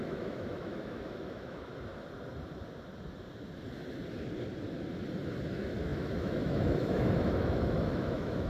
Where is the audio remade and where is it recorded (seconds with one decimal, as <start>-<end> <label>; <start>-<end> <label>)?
0.0-1.7 remade; 1.7-5.5 recorded; 5.5-8.5 remade